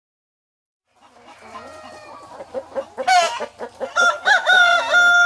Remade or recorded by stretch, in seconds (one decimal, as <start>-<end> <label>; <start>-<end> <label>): 0.0-0.8 remade; 0.8-4.0 recorded; 4.0-4.7 remade; 4.7-5.3 recorded